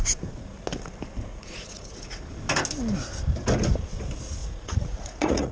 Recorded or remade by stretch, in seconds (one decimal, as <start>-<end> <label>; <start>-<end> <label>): 0.0-1.3 recorded; 1.3-2.2 remade; 2.2-4.4 recorded; 4.4-5.5 remade